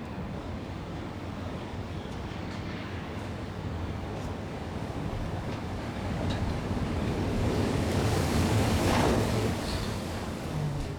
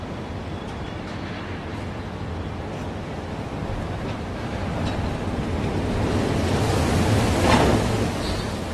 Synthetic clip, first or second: first